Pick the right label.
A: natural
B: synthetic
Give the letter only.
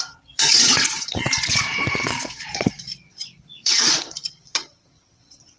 B